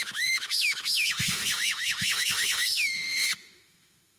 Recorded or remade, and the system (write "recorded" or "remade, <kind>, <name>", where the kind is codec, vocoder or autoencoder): remade, autoencoder, DAC-VAE